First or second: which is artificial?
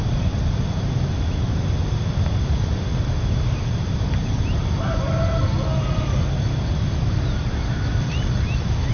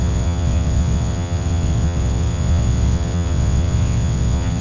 second